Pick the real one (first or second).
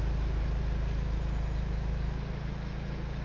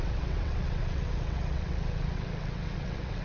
first